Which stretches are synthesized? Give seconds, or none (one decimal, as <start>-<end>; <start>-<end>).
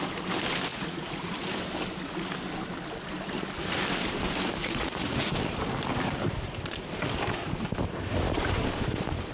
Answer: 0.7-1.3; 4.6-5.3